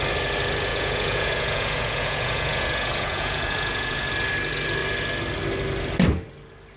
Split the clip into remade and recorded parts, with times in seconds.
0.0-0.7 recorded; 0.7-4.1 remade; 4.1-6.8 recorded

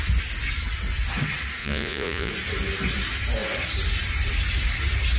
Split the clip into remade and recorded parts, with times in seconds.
0.0-1.6 recorded; 1.6-2.3 remade; 2.3-5.2 recorded

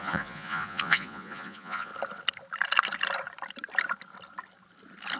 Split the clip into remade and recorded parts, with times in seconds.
0.0-1.9 remade; 1.9-5.2 recorded

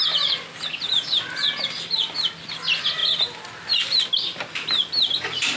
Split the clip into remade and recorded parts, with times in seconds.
0.0-5.6 recorded

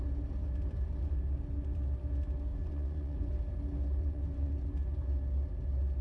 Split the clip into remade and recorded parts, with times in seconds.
0.0-2.5 recorded; 2.5-3.3 remade; 3.3-4.0 recorded; 4.0-4.5 remade; 4.5-6.0 recorded

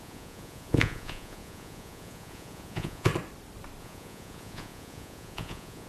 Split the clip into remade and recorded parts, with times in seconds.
0.0-3.1 remade; 3.1-3.8 recorded; 3.8-5.9 remade

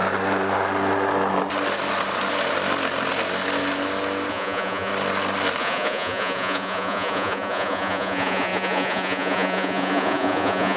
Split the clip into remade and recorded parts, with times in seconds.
0.0-4.3 recorded; 4.3-4.9 remade; 4.9-5.6 recorded; 5.6-10.8 remade

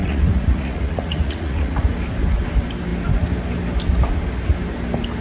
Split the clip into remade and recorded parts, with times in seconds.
0.0-1.8 remade; 1.8-5.2 recorded